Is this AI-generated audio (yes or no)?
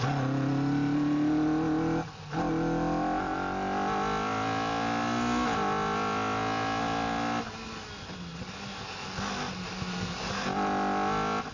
no